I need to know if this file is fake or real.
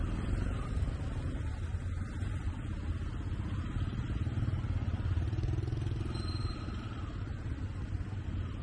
fake